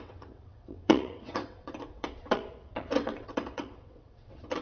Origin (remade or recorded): remade